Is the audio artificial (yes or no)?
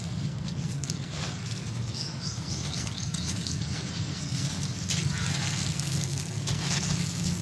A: yes